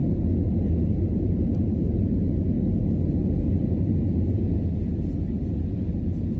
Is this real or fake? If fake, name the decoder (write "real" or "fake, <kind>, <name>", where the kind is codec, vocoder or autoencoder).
real